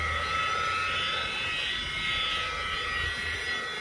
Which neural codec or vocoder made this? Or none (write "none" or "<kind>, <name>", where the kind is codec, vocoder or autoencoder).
none